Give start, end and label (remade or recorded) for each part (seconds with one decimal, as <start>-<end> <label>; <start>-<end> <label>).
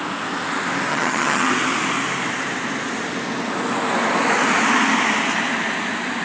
0.0-0.9 recorded; 0.9-1.5 remade; 1.5-6.2 recorded